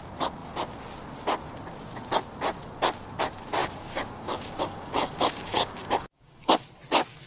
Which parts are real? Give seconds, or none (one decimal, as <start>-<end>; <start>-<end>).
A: 0.0-3.6; 6.5-7.3